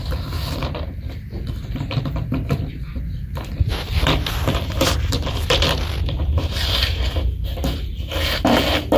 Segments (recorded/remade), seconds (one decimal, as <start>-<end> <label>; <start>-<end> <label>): 0.0-2.9 recorded; 2.9-7.6 remade; 7.6-9.0 recorded